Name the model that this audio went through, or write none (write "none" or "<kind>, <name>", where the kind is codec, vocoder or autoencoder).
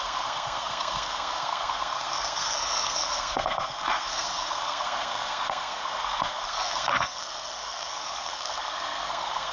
codec, SNAC